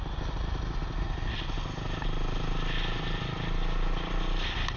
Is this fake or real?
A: real